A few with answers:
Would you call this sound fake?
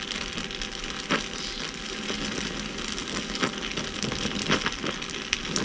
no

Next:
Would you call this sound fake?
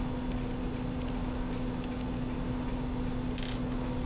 no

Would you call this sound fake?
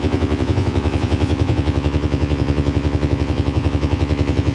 yes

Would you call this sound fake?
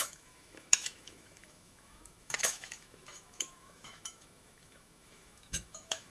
yes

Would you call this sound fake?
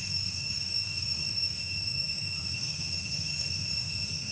yes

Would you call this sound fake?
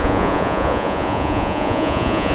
yes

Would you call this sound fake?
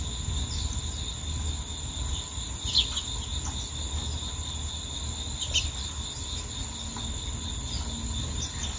no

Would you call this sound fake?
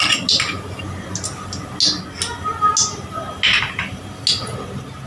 no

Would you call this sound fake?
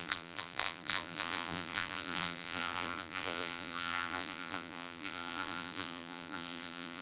yes